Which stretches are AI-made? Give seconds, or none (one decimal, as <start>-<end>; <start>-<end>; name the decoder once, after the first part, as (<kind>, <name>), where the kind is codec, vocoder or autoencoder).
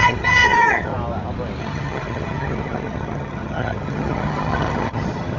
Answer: 0.0-0.9 (vocoder, HiFi-GAN); 1.6-5.4